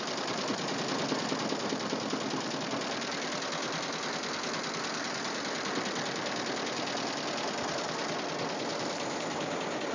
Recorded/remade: recorded